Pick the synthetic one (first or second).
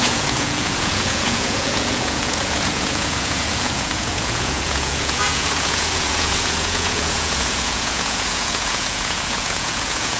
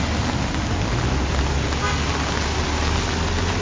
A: first